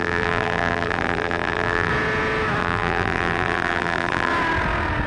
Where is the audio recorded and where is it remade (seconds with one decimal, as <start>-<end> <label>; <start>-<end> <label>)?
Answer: 0.0-1.9 remade; 1.9-2.6 recorded; 2.6-4.3 remade; 4.3-5.1 recorded